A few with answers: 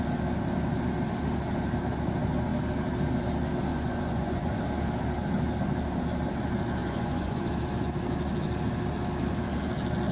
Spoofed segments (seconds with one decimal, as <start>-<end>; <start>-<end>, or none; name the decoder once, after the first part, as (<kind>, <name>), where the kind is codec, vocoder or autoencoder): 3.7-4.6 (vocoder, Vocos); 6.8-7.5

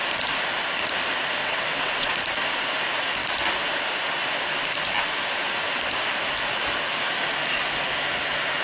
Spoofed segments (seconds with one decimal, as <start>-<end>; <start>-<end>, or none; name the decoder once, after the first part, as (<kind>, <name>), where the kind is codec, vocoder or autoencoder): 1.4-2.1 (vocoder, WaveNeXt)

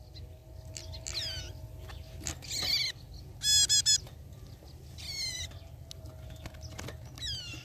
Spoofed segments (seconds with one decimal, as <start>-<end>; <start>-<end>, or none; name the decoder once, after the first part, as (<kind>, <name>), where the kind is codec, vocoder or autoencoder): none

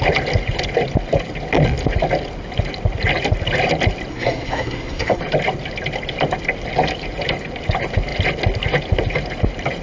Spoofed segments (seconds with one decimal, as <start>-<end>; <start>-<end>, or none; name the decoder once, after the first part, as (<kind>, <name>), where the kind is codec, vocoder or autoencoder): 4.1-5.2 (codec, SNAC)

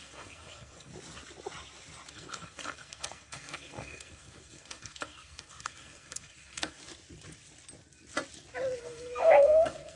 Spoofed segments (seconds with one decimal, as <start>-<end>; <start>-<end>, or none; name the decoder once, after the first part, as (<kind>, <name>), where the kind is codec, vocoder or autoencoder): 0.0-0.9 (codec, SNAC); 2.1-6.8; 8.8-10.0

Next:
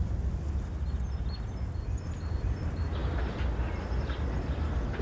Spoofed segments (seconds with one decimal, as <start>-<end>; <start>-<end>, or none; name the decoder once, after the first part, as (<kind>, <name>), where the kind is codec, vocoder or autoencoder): none